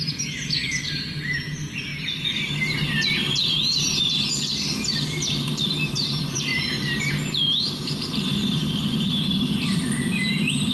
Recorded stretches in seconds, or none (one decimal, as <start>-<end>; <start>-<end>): 1.9-3.2; 4.5-5.0; 6.5-7.1